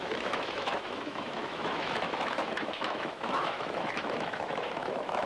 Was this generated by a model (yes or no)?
yes